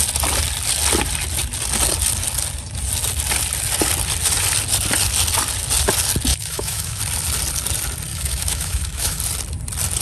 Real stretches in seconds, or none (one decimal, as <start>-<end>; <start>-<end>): 0.0-6.3; 7.0-8.1; 9.2-10.0